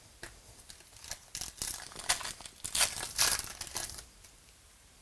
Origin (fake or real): real